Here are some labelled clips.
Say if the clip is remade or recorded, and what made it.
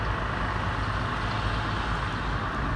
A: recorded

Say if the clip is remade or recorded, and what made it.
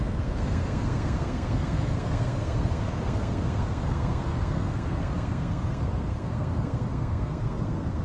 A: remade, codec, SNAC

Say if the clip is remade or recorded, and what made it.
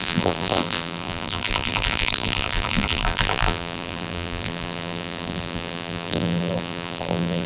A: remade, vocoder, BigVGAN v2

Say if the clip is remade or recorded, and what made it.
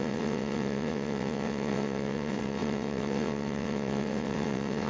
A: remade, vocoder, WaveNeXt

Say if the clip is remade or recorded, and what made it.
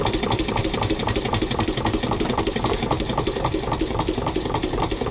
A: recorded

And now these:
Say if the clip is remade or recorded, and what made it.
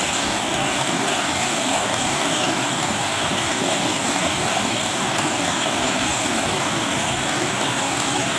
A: remade, codec, DAC